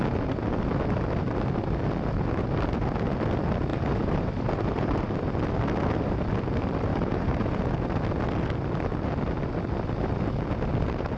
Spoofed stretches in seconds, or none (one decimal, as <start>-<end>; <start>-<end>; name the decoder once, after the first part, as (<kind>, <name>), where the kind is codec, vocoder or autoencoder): 3.7-5.3 (vocoder, BigVGAN v2); 6.9-7.7